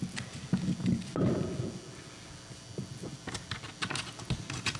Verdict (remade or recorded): recorded